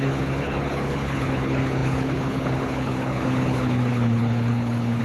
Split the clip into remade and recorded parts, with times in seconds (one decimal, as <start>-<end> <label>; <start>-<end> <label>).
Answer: 0.0-5.0 remade